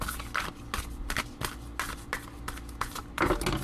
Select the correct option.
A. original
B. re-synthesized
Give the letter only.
A